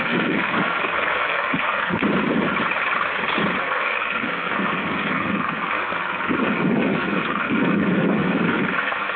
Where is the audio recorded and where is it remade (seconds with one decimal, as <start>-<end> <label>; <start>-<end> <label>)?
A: 0.0-2.0 remade; 2.0-3.6 recorded; 3.6-9.2 remade